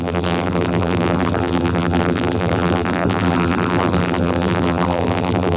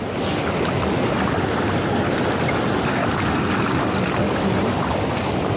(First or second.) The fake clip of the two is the first